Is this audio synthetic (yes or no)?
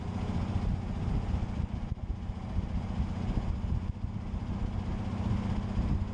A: no